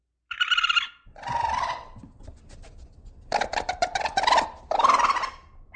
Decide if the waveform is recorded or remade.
recorded